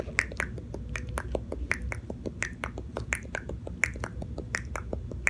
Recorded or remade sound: recorded